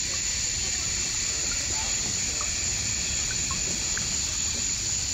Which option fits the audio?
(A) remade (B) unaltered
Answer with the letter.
B